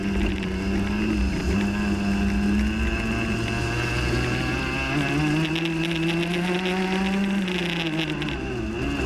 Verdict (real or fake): real